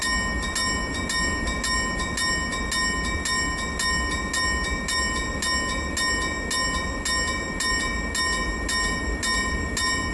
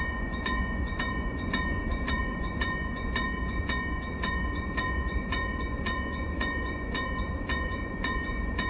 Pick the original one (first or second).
first